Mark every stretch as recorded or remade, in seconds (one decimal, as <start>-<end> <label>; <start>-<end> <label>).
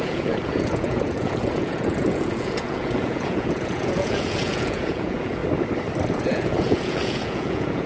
0.0-5.4 remade; 5.4-6.1 recorded; 6.1-7.9 remade